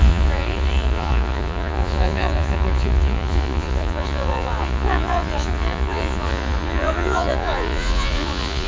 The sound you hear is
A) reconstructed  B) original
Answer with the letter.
A